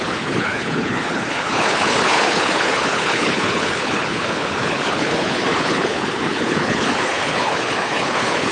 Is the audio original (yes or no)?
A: no